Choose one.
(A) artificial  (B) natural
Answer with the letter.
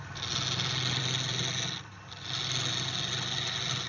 B